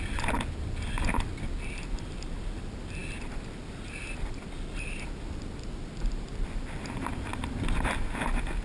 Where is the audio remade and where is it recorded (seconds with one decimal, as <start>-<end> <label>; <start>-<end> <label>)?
0.0-8.6 recorded